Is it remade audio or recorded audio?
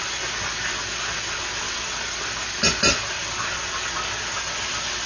recorded